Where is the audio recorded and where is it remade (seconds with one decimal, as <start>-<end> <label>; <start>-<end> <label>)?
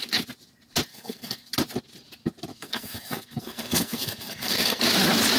0.0-0.9 recorded; 0.9-1.5 remade; 1.5-2.5 recorded; 2.5-4.8 remade; 4.8-5.4 recorded